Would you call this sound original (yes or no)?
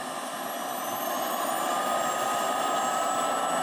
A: yes